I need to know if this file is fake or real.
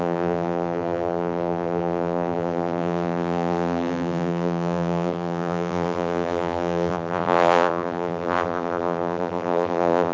fake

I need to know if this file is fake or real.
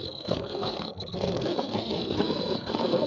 fake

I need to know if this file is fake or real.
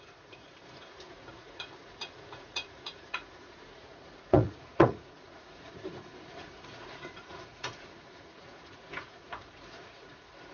fake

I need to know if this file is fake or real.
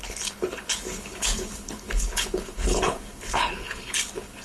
fake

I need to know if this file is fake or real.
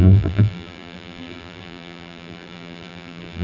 fake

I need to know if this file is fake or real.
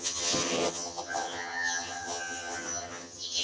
fake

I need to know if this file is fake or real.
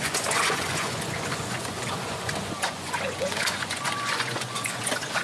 fake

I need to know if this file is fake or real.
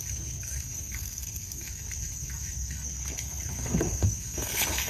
fake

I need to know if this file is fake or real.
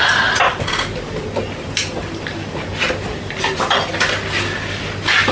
real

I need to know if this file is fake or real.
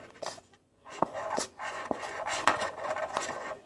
fake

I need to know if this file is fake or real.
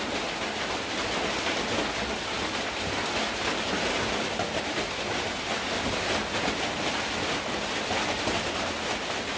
real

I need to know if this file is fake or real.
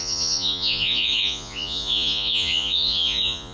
fake